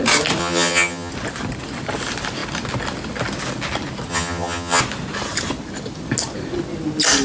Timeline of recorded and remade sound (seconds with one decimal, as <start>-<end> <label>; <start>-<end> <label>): 0.0-0.4 recorded; 0.4-1.1 remade; 1.1-4.1 recorded; 4.1-4.8 remade; 4.8-7.2 recorded